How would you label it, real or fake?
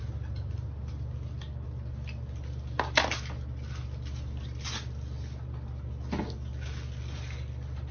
real